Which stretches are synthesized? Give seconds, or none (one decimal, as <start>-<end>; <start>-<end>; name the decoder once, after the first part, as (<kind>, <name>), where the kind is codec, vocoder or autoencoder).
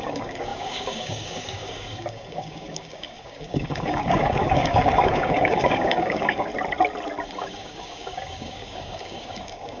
0.0-6.5 (codec, DAC); 7.4-9.8